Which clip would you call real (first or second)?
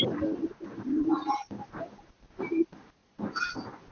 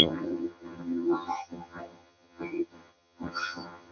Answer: first